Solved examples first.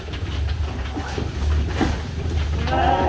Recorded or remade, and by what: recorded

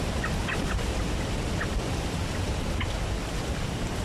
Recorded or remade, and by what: recorded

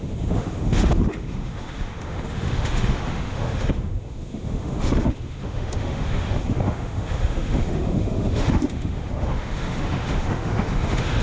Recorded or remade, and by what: remade, autoencoder, DAC-VAE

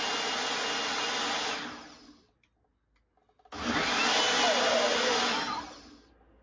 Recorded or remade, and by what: recorded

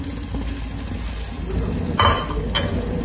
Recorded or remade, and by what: recorded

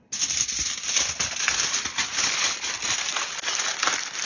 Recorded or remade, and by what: recorded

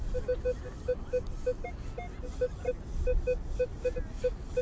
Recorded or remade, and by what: recorded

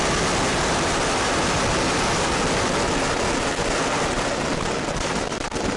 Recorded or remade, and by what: recorded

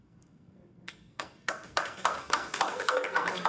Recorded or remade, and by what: remade, codec, SNAC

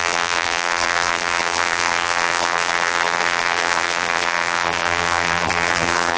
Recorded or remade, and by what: remade, vocoder, BigVGAN v2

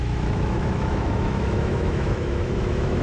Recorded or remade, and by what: remade, autoencoder, DAC-VAE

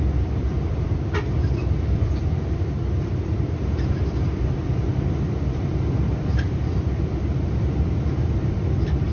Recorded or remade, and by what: remade, vocoder, BigVGAN v2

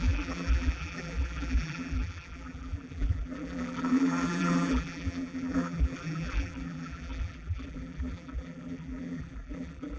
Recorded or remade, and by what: remade, vocoder, BigVGAN v2